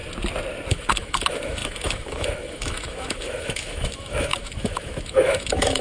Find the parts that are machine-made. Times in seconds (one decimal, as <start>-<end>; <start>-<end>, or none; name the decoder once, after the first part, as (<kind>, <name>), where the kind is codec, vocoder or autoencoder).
0.7-5.8 (autoencoder, DAC-VAE)